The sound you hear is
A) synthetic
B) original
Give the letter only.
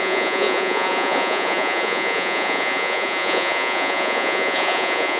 A